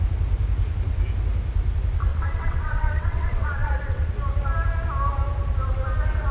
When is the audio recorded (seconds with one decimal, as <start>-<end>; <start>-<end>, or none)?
0.0-2.1; 4.1-6.3